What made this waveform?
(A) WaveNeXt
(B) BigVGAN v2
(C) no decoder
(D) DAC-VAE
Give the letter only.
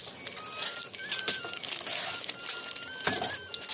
C